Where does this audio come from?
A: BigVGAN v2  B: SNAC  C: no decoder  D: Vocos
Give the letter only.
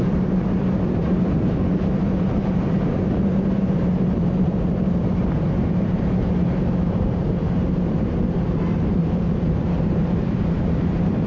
A